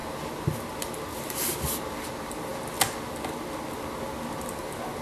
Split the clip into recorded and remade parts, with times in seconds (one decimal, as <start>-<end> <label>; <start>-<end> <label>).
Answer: 0.0-5.0 recorded